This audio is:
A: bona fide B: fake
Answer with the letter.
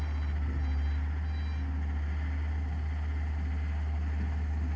A